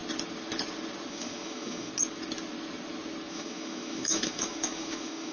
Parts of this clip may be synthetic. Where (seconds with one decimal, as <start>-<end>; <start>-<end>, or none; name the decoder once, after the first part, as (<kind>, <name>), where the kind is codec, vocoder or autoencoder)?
1.1-1.9 (autoencoder, DAC-VAE); 3.3-5.3